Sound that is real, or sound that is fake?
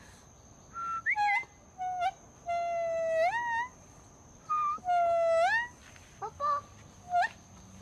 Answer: real